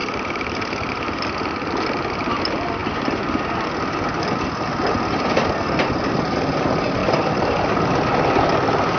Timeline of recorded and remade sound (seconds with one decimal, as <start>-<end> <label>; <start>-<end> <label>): 0.0-0.9 remade; 0.9-7.0 recorded; 7.0-7.6 remade; 7.6-9.0 recorded